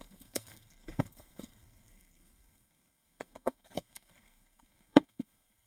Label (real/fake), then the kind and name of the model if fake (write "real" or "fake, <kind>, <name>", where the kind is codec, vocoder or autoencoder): fake, codec, SNAC